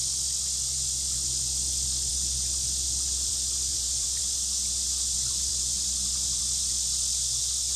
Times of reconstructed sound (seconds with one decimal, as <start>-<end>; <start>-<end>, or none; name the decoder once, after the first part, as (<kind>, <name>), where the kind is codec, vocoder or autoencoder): 3.7-4.2 (vocoder, BigVGAN v2)